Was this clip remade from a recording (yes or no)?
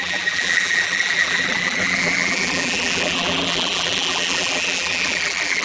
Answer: yes